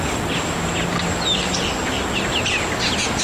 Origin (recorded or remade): recorded